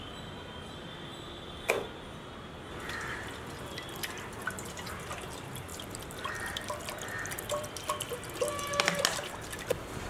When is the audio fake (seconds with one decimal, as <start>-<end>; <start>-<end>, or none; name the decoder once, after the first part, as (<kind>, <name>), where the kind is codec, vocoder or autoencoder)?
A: none